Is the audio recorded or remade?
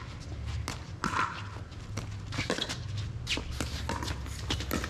recorded